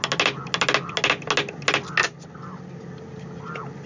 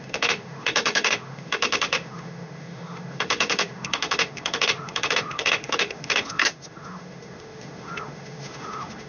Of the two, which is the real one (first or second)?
first